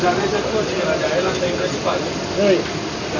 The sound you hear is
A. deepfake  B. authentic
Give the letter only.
B